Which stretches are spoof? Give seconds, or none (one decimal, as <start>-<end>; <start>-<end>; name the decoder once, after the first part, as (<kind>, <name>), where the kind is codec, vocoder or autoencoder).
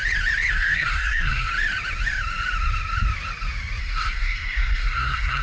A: 0.5-1.5 (codec, SNAC); 3.8-5.4